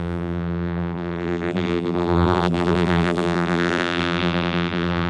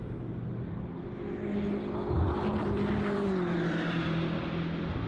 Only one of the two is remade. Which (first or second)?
first